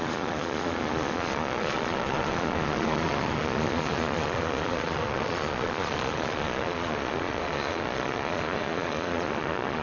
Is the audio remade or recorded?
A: remade